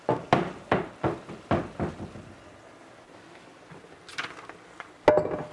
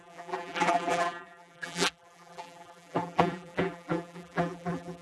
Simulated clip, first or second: second